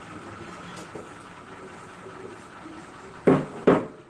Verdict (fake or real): real